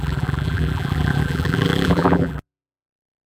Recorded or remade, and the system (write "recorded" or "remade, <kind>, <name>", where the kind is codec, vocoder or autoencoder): remade, vocoder, BigVGAN v2